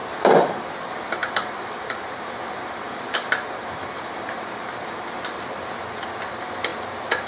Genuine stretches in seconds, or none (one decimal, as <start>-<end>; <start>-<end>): 0.7-1.2; 5.6-7.3